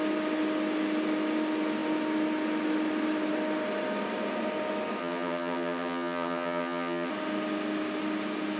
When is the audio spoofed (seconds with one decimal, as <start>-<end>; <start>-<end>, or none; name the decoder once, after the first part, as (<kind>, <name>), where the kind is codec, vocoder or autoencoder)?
5.0-7.1 (vocoder, HiFi-GAN)